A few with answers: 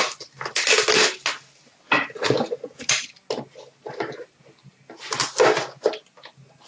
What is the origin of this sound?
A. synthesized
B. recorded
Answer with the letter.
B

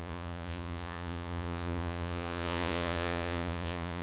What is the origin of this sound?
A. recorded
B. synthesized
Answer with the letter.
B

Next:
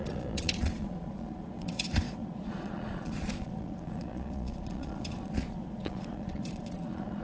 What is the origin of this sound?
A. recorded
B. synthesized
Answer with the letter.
B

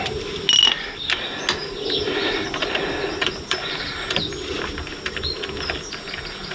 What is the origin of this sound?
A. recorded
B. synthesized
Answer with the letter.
A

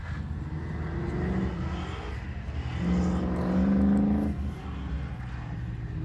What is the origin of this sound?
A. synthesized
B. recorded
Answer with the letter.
B